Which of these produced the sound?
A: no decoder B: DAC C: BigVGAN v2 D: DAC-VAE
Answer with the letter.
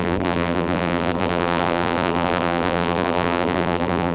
C